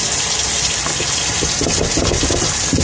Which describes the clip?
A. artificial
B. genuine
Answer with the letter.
B